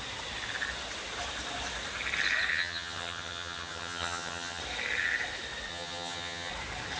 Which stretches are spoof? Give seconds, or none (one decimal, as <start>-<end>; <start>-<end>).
2.5-4.6; 5.7-6.5